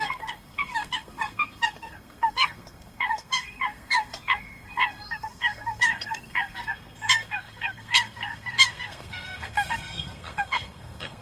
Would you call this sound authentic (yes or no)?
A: no